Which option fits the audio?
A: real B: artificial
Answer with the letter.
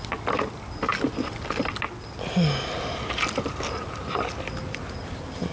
A